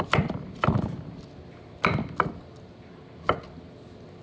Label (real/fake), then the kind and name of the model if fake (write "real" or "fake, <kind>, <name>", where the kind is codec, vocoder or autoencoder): real